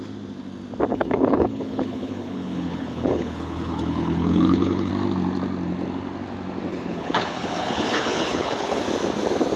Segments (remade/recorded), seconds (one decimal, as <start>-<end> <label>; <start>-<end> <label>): 0.0-0.9 recorded; 0.9-4.9 remade; 4.9-6.7 recorded; 6.7-8.8 remade; 8.8-9.6 recorded